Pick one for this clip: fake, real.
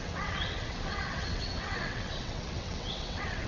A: fake